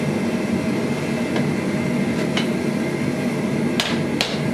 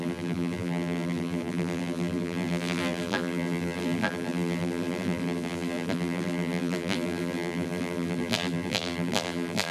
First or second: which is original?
first